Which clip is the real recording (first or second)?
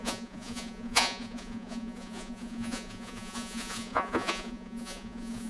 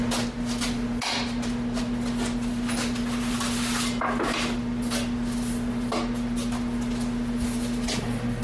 second